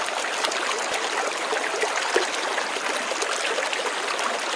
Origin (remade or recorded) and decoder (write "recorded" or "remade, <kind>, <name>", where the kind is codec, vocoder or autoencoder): recorded